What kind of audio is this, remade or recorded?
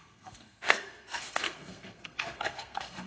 remade